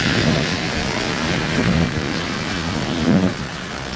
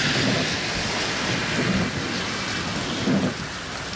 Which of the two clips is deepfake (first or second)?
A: first